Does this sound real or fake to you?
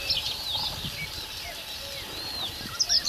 real